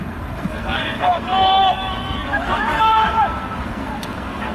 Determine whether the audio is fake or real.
fake